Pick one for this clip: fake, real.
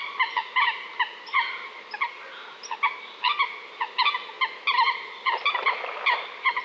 real